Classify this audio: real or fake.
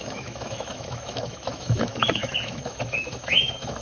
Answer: fake